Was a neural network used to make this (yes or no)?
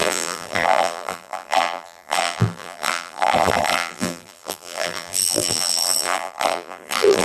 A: yes